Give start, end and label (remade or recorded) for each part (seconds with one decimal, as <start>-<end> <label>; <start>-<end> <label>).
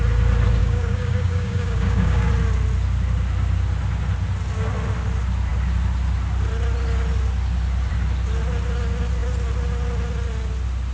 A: 0.0-0.6 recorded; 0.6-2.3 remade; 2.3-10.9 recorded